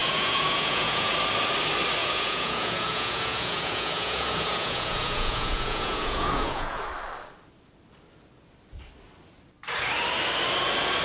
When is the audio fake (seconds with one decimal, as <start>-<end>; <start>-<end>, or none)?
0.0-1.1; 2.0-6.8